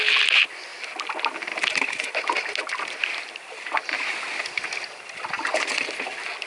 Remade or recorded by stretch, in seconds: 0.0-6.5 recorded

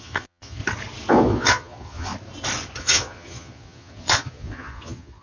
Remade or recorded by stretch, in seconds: 0.0-0.6 remade; 0.6-1.1 recorded; 1.1-2.1 remade; 2.1-2.8 recorded; 2.8-5.2 remade

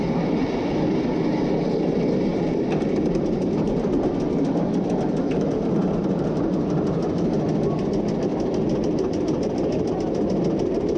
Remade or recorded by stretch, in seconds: 0.0-2.3 recorded; 2.3-7.0 remade; 7.0-11.0 recorded